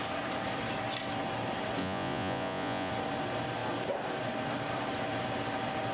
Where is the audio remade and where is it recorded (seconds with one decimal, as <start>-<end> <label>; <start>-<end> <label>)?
0.0-1.8 recorded; 1.8-2.9 remade; 2.9-5.9 recorded